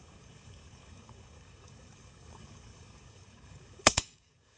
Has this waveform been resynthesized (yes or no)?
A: yes